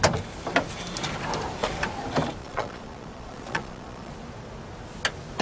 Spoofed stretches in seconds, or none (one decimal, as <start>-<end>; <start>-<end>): 2.4-4.1